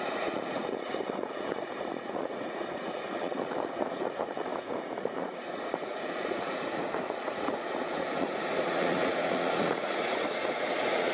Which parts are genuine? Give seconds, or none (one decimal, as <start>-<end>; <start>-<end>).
none